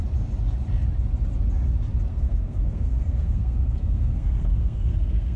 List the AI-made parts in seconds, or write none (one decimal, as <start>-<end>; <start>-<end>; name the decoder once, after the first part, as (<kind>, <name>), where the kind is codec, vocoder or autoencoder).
2.1-5.4 (codec, SNAC)